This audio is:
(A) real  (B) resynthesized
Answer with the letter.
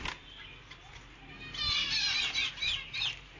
A